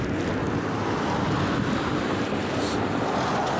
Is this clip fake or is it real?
real